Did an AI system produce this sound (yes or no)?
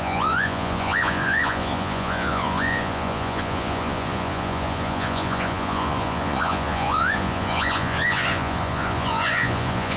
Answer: yes